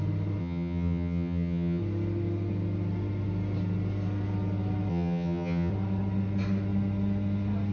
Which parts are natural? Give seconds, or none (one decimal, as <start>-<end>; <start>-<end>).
0.0-0.4; 1.8-4.9; 5.7-7.7